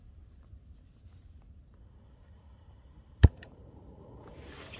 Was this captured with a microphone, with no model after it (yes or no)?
no